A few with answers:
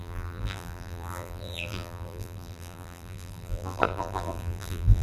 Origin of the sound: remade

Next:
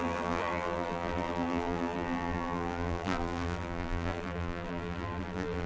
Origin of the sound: remade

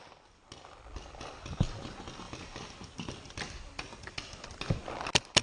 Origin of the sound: recorded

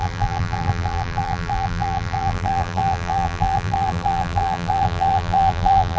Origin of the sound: remade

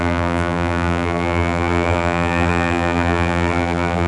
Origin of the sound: remade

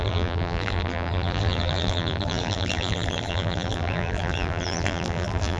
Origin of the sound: remade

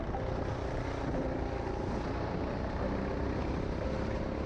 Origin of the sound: recorded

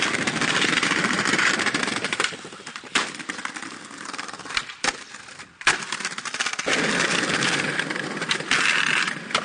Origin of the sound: recorded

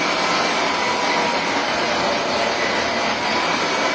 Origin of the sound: recorded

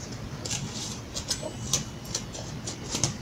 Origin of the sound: recorded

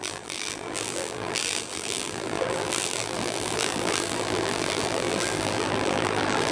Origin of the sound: remade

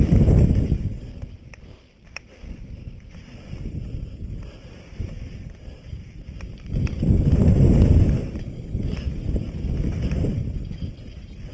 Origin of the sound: remade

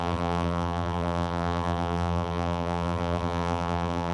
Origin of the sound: remade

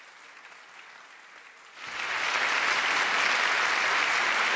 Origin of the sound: recorded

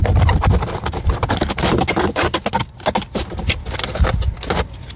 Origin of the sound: recorded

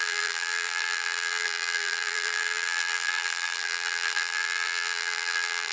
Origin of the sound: remade